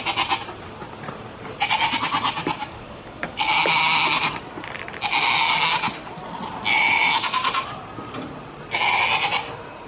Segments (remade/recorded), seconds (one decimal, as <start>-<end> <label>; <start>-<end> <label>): 0.0-2.6 recorded; 2.6-3.5 remade; 3.5-9.9 recorded